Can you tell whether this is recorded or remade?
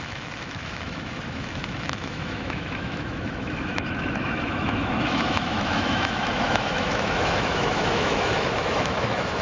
remade